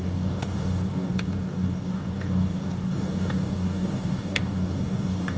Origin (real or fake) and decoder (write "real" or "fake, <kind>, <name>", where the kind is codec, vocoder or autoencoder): fake, codec, DAC